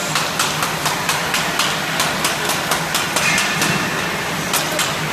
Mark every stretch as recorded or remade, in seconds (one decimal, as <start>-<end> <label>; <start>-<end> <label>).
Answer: 0.0-5.1 recorded